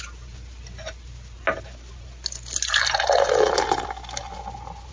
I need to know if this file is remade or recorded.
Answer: recorded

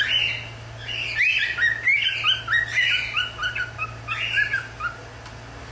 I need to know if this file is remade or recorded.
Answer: recorded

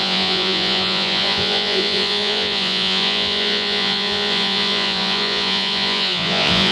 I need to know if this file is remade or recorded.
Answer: remade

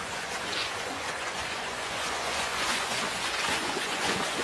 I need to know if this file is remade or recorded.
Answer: remade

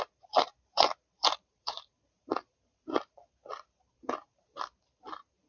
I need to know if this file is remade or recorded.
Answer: remade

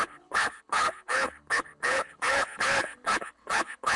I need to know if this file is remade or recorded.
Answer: remade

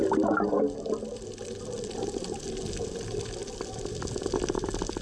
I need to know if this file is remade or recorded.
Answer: recorded